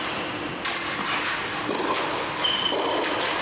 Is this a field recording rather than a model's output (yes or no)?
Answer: yes